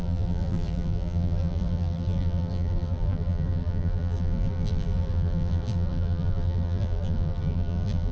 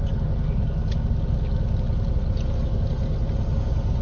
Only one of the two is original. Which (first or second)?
second